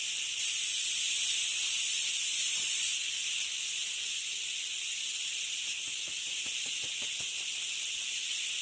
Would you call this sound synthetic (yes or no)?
no